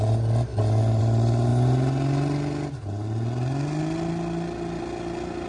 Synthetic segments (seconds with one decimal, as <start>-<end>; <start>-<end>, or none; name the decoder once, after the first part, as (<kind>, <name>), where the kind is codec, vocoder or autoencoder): none